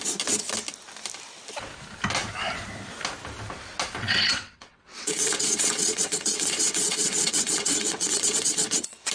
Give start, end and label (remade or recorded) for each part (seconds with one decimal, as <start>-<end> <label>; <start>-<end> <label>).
0.0-4.0 recorded; 4.0-9.1 remade